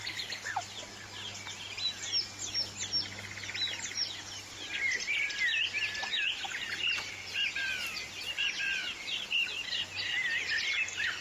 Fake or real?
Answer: real